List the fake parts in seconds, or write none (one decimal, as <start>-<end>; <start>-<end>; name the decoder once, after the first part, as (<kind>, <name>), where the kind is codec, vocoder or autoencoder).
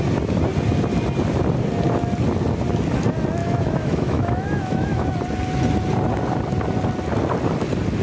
3.4-5.1 (autoencoder, DAC-VAE)